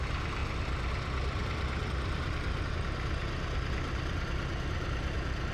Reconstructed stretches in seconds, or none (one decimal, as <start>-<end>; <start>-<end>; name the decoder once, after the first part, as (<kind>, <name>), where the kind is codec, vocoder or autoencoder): none